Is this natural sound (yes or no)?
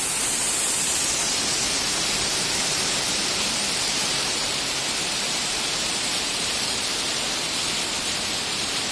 no